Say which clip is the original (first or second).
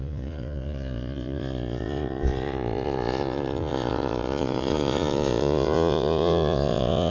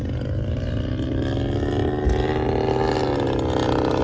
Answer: second